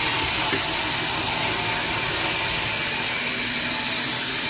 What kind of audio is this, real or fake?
real